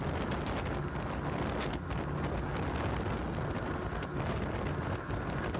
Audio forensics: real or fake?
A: real